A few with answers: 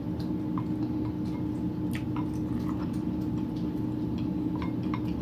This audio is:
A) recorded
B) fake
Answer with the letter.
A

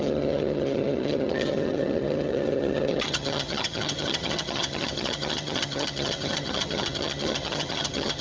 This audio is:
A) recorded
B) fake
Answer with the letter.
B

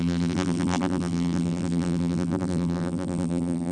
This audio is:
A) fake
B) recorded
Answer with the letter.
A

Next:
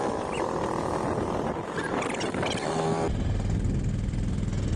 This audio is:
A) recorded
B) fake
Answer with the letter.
A